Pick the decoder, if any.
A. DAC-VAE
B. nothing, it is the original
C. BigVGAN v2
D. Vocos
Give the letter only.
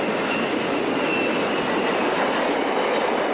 B